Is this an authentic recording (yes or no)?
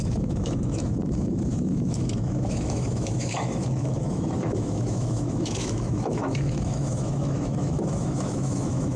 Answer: no